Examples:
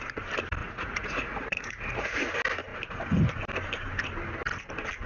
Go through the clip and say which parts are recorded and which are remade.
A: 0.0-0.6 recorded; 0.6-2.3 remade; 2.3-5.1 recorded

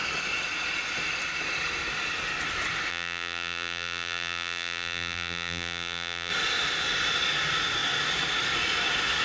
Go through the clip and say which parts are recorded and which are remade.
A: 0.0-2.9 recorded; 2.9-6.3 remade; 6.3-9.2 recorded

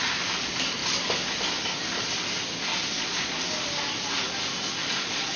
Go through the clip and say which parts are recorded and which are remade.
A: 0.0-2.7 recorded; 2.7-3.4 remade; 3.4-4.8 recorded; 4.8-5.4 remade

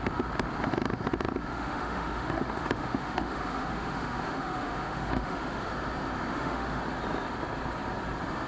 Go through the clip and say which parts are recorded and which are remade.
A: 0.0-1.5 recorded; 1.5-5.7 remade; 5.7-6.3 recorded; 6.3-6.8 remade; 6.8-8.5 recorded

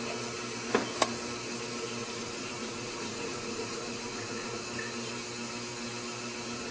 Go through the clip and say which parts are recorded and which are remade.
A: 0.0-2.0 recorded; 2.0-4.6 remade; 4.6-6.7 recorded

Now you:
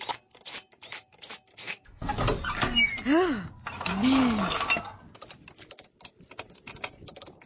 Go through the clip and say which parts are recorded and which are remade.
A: 0.0-1.6 recorded; 1.6-2.1 remade; 2.1-7.5 recorded

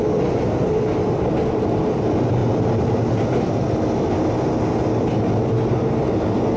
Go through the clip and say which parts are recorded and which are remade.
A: 0.0-2.4 remade; 2.4-6.6 recorded

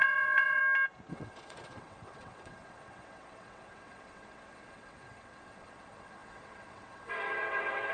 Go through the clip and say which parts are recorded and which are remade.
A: 0.0-0.6 remade; 0.6-1.1 recorded; 1.1-7.9 remade